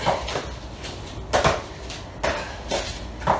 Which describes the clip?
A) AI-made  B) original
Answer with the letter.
B